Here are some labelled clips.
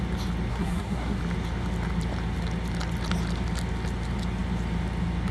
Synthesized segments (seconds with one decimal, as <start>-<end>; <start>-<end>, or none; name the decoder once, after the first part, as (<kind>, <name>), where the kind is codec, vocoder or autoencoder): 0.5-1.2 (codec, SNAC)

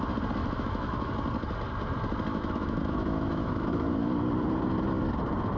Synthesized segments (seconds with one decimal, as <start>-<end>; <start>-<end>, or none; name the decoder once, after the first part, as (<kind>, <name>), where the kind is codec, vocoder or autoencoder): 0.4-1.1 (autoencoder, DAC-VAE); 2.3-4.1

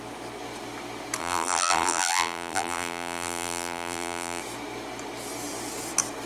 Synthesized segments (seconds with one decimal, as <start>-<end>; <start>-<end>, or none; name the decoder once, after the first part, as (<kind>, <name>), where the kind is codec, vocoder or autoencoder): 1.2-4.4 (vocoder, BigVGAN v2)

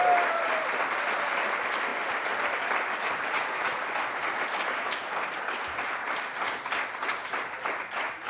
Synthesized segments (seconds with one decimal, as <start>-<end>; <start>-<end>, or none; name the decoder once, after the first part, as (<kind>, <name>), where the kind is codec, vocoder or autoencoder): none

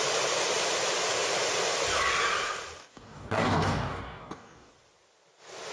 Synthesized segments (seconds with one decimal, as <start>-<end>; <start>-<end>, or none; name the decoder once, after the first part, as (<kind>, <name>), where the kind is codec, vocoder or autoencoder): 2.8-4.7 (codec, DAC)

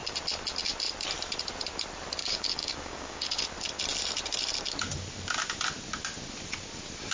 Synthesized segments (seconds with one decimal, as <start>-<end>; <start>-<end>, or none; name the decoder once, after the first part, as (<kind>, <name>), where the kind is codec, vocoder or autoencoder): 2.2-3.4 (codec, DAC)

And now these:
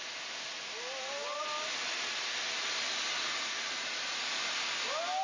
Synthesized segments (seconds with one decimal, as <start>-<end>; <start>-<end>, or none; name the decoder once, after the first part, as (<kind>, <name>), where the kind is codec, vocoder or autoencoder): none